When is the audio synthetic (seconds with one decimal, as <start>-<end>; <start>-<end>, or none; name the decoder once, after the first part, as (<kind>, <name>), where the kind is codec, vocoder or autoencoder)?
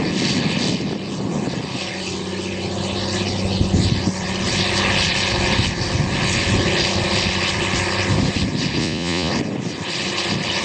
8.8-9.3 (vocoder, Vocos)